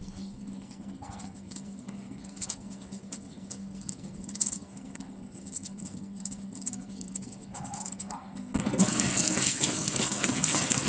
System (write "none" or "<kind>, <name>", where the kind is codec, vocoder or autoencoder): codec, SNAC